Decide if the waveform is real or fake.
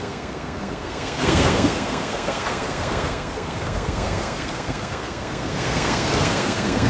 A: fake